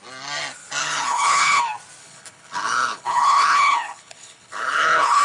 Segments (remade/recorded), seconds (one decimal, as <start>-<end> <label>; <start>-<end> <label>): 0.0-0.8 recorded; 0.8-1.6 remade; 1.6-2.0 recorded; 2.0-5.2 remade